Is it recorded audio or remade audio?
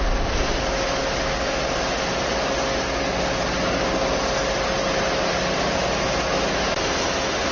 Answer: recorded